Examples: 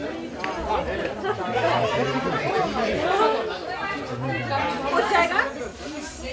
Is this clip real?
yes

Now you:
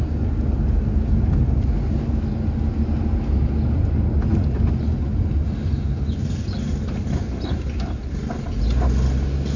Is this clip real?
yes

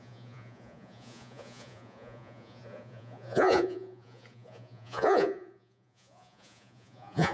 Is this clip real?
no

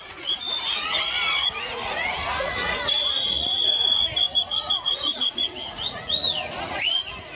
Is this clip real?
no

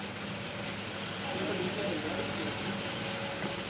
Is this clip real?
yes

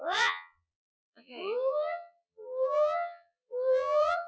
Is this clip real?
no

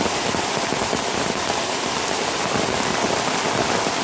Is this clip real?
yes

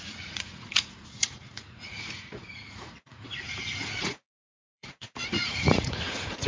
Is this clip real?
no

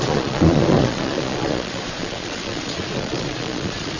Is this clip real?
no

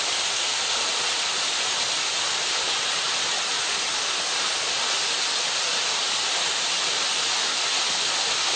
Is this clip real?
yes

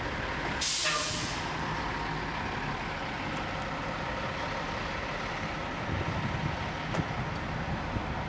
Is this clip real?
yes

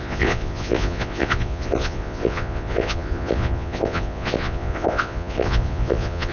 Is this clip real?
no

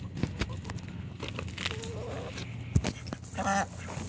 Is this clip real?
yes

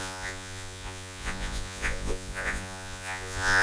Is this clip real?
no